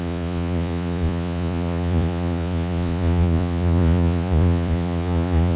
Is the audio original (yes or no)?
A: no